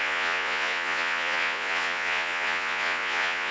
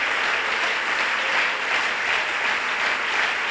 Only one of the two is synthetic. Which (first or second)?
first